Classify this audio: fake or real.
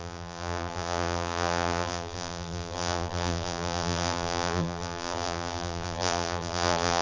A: fake